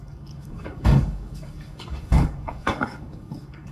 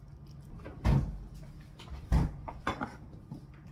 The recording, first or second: second